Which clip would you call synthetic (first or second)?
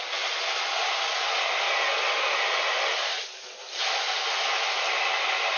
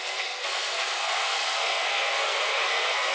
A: second